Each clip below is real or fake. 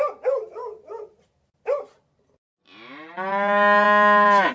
real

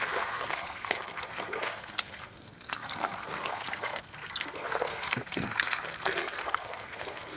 fake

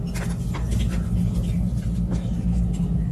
real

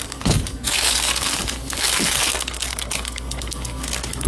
fake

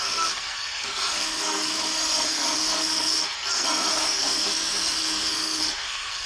fake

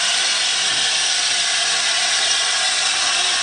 real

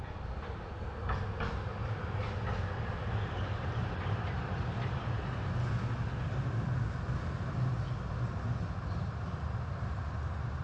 real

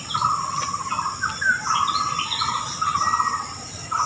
real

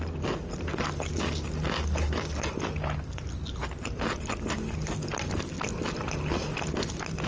real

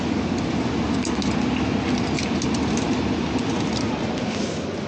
real